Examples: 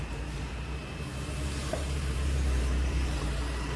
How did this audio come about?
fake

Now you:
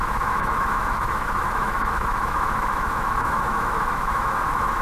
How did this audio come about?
fake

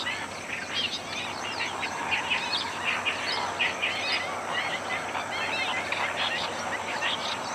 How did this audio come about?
real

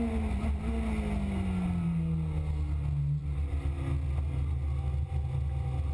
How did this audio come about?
real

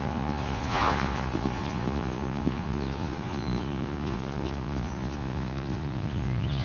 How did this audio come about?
fake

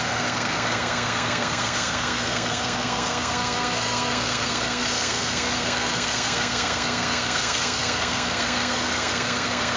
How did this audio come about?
fake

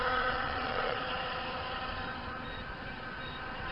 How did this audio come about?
fake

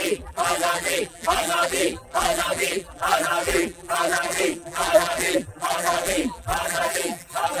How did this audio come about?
fake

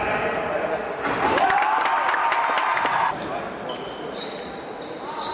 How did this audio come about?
real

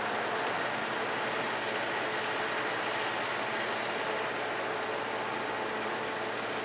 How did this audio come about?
real